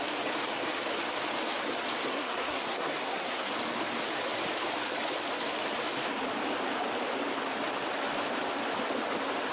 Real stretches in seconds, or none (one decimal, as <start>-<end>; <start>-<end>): 0.0-2.1; 3.5-9.5